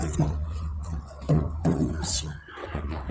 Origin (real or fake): fake